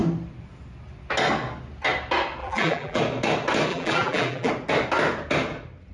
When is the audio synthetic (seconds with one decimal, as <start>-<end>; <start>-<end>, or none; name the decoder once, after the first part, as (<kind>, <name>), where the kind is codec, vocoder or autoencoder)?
2.4-3.0 (vocoder, BigVGAN v2); 3.7-4.5